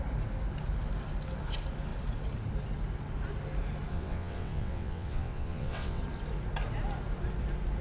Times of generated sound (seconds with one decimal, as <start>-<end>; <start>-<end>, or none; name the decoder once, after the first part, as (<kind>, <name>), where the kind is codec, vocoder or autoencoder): 3.9-6.0 (vocoder, WaveNeXt)